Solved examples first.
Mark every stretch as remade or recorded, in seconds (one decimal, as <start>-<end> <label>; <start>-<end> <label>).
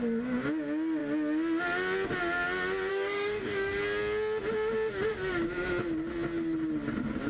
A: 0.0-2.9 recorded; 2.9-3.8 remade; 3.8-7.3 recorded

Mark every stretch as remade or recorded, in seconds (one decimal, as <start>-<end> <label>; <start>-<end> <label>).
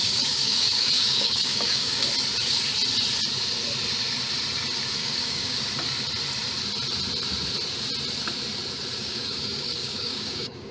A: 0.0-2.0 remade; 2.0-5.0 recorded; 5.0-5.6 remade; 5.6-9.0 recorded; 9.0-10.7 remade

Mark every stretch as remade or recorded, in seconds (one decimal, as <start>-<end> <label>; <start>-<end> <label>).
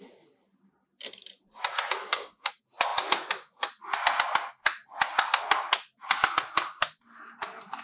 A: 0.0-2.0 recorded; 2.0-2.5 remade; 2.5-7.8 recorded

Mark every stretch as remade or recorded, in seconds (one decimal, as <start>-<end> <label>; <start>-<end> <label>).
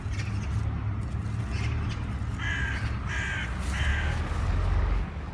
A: 0.0-3.9 recorded; 3.9-5.3 remade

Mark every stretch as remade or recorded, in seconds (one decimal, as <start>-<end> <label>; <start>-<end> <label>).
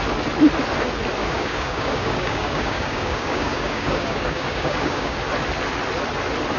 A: 0.0-1.2 recorded; 1.2-5.2 remade; 5.2-6.6 recorded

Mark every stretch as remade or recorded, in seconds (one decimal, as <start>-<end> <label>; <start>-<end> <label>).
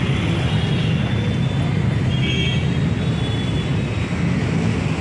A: 0.0-5.0 recorded